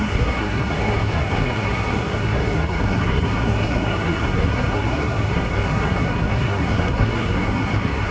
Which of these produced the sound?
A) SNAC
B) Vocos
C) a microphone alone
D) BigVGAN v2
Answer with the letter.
A